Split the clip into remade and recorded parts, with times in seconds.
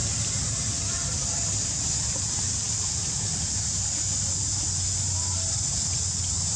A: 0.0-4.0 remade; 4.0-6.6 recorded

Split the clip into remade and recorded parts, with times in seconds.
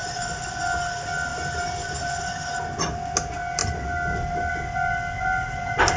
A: 0.0-0.5 remade; 0.5-1.3 recorded; 1.3-2.2 remade; 2.2-6.0 recorded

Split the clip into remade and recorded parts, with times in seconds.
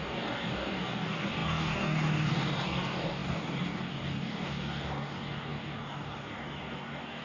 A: 0.0-7.2 remade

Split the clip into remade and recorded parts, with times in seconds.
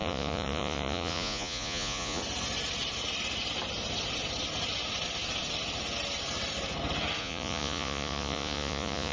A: 0.0-2.2 remade; 2.2-7.2 recorded; 7.2-9.1 remade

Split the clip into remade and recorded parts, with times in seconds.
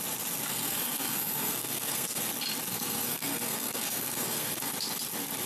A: 0.0-0.5 recorded; 0.5-2.3 remade; 2.3-2.7 recorded; 2.7-4.7 remade; 4.7-5.5 recorded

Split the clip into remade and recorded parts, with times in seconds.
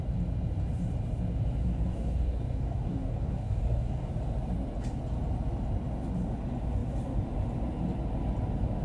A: 0.0-1.6 recorded; 1.6-4.1 remade; 4.1-8.8 recorded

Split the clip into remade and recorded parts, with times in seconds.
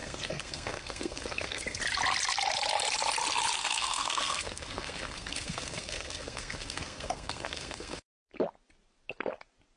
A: 0.0-1.8 remade; 1.8-3.6 recorded; 3.6-8.3 remade; 8.3-9.8 recorded